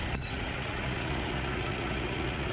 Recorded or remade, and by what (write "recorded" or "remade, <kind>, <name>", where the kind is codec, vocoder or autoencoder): remade, vocoder, Vocos